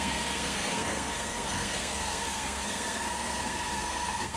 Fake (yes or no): yes